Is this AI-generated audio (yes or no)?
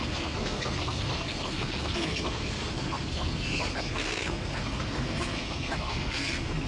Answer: yes